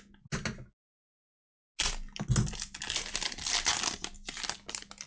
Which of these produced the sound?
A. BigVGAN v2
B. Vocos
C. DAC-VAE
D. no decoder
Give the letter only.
D